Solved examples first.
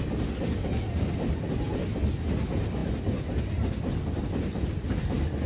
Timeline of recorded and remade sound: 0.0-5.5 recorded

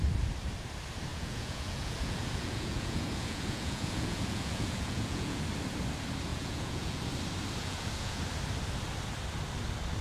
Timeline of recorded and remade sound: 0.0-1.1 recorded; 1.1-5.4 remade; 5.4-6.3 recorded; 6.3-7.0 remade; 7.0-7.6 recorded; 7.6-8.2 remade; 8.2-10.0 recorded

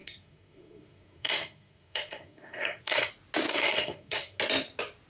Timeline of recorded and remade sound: 0.0-3.1 remade; 3.1-3.5 recorded; 3.5-4.4 remade; 4.4-5.1 recorded